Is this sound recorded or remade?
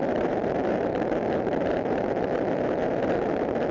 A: remade